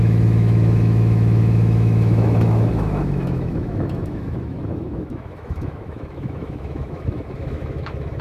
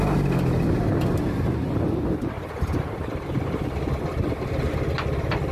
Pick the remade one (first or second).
first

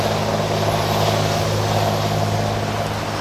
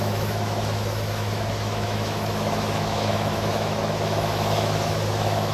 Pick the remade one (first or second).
second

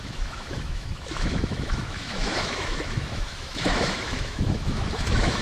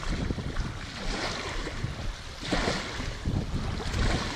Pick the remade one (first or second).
first